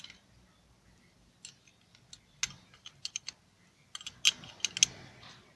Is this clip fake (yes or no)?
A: no